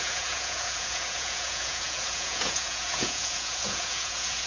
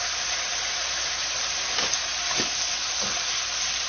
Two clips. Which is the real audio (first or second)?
second